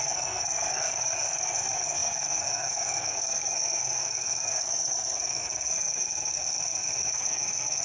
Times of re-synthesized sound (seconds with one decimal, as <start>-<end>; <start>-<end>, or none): 0.0-7.8

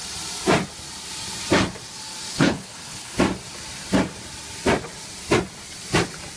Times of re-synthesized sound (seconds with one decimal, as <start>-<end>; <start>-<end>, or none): 2.3-3.2

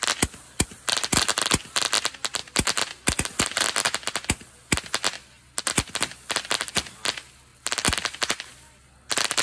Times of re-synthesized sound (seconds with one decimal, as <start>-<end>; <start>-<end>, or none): 7.5-8.2

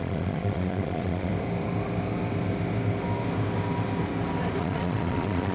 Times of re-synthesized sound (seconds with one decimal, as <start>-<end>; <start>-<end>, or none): 0.0-1.3; 4.6-5.5

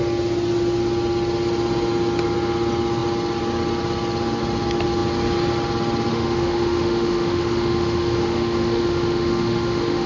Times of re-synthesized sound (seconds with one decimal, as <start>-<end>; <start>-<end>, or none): 6.1-10.1

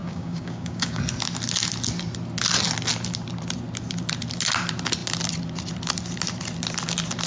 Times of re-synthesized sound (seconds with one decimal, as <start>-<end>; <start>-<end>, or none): 0.0-1.0

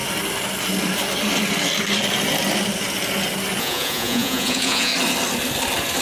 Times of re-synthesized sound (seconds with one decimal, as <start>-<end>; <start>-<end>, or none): 3.6-4.9